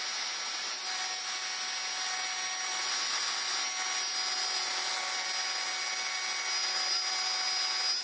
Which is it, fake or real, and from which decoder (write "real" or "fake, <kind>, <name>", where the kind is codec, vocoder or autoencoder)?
real